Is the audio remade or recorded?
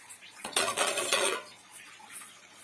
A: remade